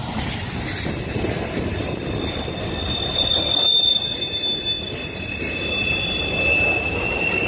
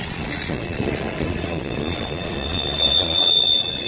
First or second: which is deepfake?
second